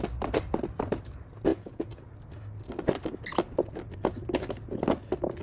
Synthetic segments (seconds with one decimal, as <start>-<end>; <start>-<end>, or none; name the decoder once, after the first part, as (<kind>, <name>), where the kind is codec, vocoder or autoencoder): 1.5-2.0 (vocoder, Vocos)